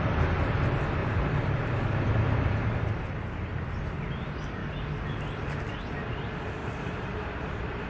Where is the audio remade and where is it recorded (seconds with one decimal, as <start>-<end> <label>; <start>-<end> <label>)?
0.0-1.0 recorded; 1.0-2.8 remade; 2.8-6.6 recorded; 6.6-7.9 remade